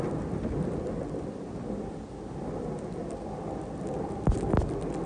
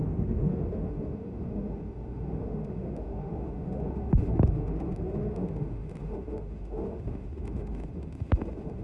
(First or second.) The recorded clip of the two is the first